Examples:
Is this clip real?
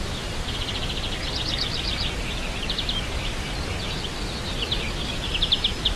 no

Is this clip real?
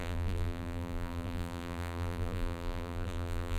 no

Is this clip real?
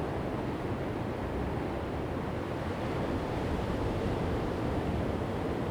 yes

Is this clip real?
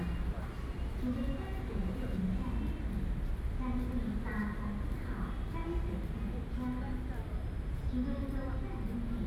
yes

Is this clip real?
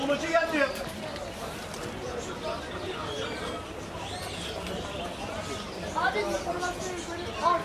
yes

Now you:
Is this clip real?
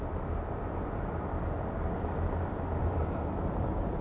yes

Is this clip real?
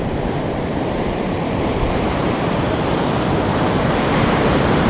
no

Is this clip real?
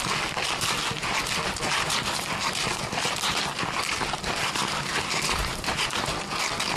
yes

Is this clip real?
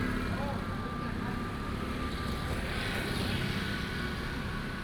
yes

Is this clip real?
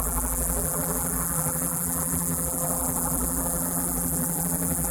no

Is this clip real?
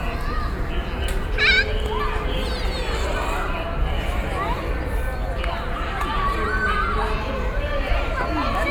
yes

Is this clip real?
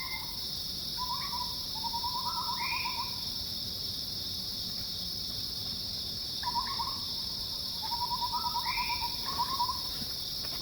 no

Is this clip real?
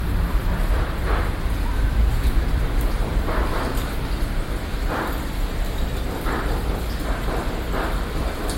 no